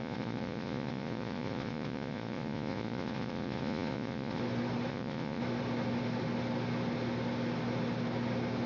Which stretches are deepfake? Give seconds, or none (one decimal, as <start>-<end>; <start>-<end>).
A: 0.0-4.4; 4.9-5.4